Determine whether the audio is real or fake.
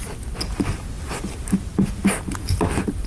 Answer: real